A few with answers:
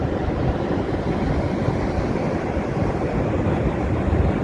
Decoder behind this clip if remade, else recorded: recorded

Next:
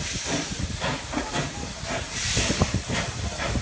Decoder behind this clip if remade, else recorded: recorded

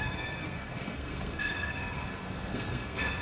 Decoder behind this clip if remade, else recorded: remade, codec, SNAC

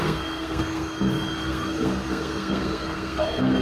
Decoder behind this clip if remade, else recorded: remade, codec, SNAC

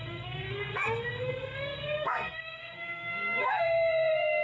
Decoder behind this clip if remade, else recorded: remade, codec, SNAC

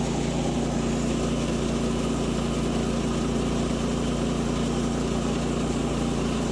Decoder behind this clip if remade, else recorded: recorded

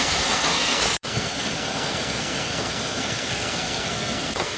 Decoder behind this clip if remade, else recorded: remade, codec, SNAC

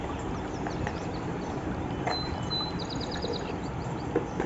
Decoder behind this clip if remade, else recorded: recorded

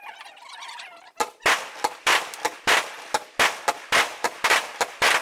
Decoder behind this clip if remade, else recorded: recorded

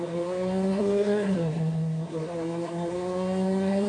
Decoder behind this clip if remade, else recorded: remade, codec, SNAC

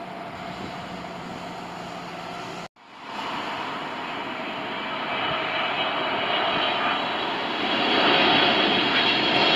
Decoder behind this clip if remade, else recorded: recorded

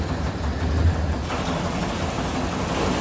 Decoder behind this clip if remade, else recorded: recorded